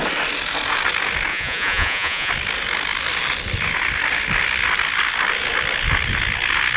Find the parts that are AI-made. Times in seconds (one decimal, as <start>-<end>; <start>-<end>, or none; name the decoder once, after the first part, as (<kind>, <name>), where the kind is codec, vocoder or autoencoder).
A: 1.3-2.3 (vocoder, Vocos)